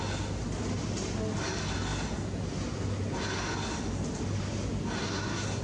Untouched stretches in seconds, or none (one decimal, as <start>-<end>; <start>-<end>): 0.0-5.0